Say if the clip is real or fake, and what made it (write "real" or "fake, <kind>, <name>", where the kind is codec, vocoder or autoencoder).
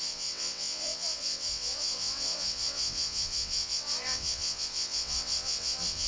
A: fake, vocoder, WaveNeXt